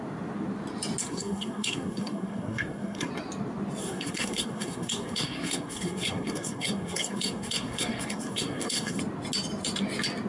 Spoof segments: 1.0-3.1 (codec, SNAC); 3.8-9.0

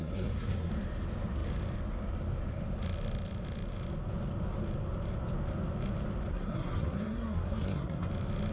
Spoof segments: 0.0-0.7 (codec, SNAC); 6.3-8.1

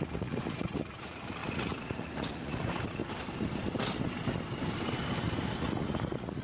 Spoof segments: 0.0-3.0 (vocoder, Vocos); 5.6-6.4

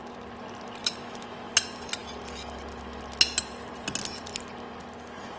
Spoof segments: 0.8-1.5 (autoencoder, DAC-VAE)

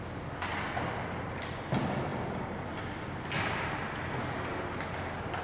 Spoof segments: none

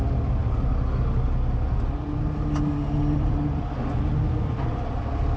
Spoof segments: none

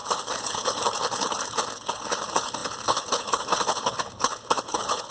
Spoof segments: 0.0-5.1 (codec, HILCodec)